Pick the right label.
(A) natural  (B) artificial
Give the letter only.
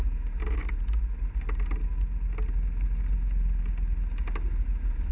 A